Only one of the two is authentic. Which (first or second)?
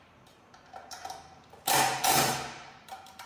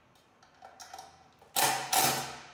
second